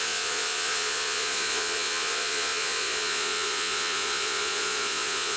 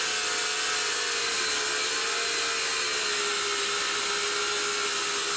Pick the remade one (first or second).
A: first